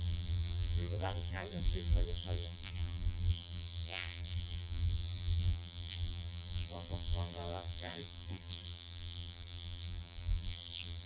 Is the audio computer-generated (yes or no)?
yes